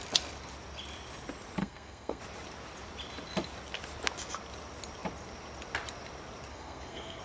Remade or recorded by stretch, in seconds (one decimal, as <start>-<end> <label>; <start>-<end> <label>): 0.0-1.6 recorded; 1.6-2.2 remade; 2.2-6.5 recorded; 6.5-7.2 remade